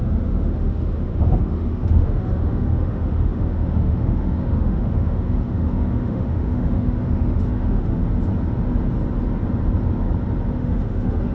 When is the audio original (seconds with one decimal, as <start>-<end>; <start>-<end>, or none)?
8.0-10.5